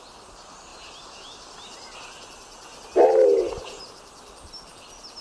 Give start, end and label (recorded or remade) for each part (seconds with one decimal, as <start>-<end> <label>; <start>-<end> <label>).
0.0-5.2 recorded